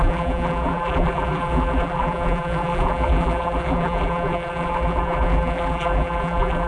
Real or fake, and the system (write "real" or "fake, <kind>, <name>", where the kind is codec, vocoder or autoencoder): fake, vocoder, BigVGAN v2